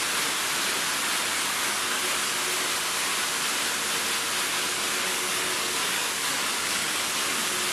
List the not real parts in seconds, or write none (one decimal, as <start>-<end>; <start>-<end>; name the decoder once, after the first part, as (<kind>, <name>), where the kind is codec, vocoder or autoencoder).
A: 1.3-2.0 (codec, DAC); 4.6-7.1